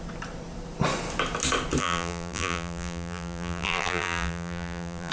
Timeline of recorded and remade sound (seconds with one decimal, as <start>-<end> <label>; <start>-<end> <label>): 0.0-1.8 recorded; 1.8-5.1 remade